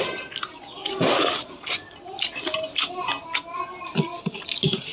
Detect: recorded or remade recorded